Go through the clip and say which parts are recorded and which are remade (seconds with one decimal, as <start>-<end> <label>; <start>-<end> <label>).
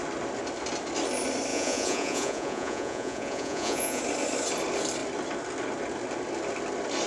0.0-1.5 recorded; 1.5-4.0 remade; 4.0-7.1 recorded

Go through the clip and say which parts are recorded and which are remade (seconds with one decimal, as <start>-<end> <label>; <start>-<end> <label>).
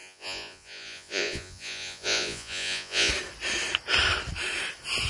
0.0-3.1 remade; 3.1-5.1 recorded